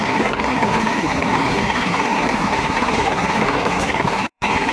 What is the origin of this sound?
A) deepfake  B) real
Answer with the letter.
A